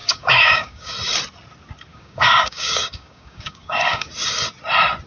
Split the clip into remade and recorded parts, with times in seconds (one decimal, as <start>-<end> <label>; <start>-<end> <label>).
0.0-0.9 remade; 0.9-1.9 recorded; 1.9-4.1 remade; 4.1-5.1 recorded